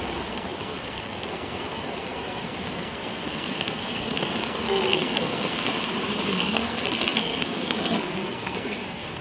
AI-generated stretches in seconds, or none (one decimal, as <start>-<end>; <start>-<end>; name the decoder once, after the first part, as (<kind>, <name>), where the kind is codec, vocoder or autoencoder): 0.0-5.7 (codec, SNAC); 6.3-9.2